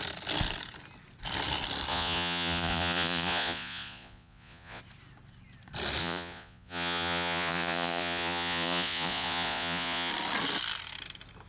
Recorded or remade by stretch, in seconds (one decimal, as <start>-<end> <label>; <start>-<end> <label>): 0.0-1.9 recorded; 1.9-4.8 remade; 4.8-6.0 recorded; 6.0-10.1 remade; 10.1-11.5 recorded

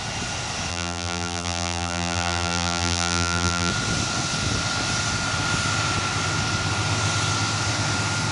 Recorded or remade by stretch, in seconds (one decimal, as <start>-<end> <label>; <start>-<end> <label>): 0.0-0.7 recorded; 0.7-3.7 remade; 3.7-8.3 recorded

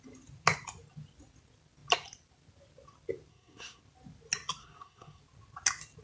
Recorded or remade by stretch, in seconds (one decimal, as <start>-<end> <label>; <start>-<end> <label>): 0.0-3.3 recorded; 3.3-3.8 remade; 3.8-4.6 recorded; 4.6-5.2 remade; 5.2-6.0 recorded